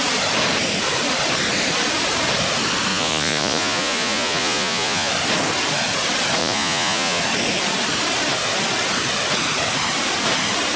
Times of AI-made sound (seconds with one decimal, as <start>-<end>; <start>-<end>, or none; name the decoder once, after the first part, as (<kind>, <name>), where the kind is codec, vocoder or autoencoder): 2.9-5.1 (vocoder, Vocos); 6.4-7.2